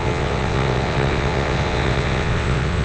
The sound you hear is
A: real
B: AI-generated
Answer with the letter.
B